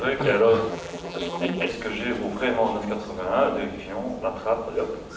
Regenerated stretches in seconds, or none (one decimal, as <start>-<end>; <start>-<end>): 0.7-1.7